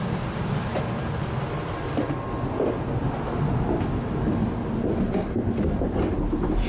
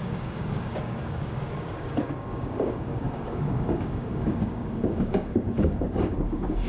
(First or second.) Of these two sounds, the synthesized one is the second